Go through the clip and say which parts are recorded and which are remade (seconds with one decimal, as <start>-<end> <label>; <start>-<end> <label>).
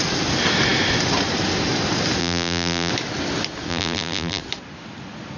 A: 0.0-2.2 recorded; 2.2-2.9 remade; 2.9-3.7 recorded; 3.7-4.4 remade; 4.4-5.4 recorded